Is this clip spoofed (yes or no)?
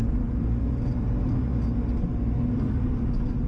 no